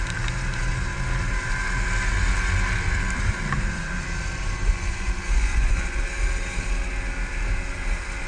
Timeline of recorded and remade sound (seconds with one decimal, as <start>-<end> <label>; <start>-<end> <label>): 0.0-4.6 recorded; 4.6-6.0 remade; 6.0-8.3 recorded